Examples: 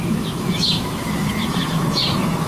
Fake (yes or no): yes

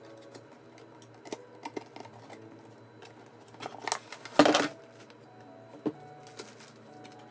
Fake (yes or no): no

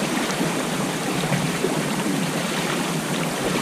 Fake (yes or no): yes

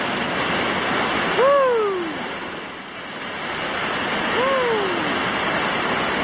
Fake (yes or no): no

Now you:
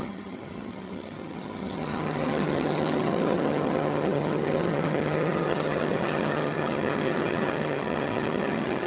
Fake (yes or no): yes